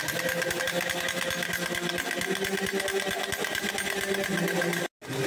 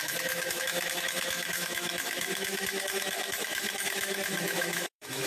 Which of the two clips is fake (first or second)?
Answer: second